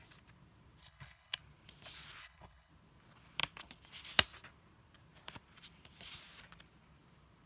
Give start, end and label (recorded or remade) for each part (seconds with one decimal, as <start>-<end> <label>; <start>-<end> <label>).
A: 0.0-0.8 recorded; 0.8-1.4 remade; 1.4-2.2 recorded; 2.2-2.7 remade; 2.7-7.5 recorded

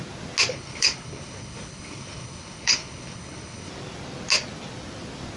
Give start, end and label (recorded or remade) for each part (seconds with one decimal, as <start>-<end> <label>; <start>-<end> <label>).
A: 0.0-0.5 recorded; 0.5-3.7 remade; 3.7-5.4 recorded

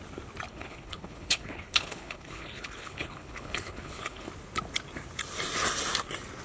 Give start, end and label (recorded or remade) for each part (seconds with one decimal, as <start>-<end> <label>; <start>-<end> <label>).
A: 0.0-0.5 recorded; 0.5-4.3 remade; 4.3-6.4 recorded

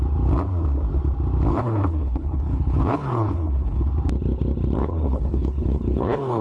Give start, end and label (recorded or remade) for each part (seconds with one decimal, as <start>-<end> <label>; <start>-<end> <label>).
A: 0.0-1.5 recorded; 1.5-3.9 remade; 3.9-4.8 recorded; 4.8-6.4 remade

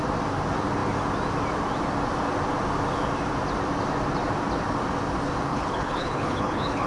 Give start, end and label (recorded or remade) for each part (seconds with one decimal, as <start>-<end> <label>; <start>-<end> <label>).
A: 0.0-5.5 recorded; 5.5-6.9 remade